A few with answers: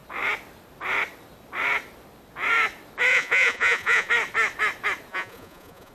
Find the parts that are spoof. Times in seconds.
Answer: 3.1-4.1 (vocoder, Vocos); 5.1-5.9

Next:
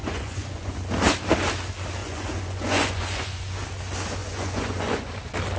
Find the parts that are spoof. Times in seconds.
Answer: 0.0-0.8 (vocoder, Vocos); 2.0-3.6; 4.2-5.1

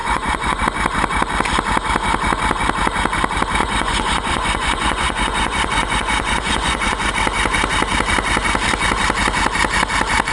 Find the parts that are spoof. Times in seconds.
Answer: 0.0-0.6 (vocoder, Vocos); 3.6-7.1

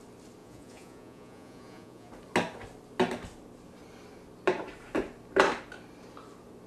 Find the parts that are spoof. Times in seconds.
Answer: 0.4-2.1 (vocoder, Vocos)

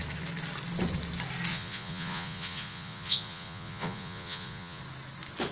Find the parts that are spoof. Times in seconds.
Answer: 1.5-4.8 (vocoder, Vocos)

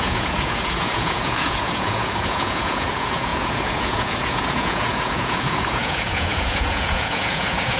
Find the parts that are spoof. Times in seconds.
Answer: 0.0-7.8 (vocoder, Vocos)

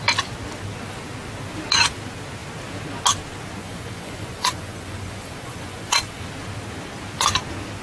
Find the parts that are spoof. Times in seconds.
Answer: 3.6-6.2 (vocoder, Vocos)

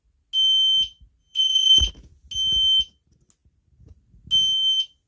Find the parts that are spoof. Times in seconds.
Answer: 1.2-1.9 (vocoder, Vocos)